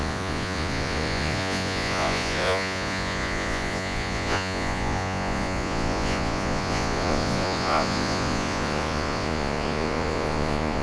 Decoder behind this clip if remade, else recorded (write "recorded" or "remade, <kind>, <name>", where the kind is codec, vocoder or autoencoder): remade, vocoder, Vocos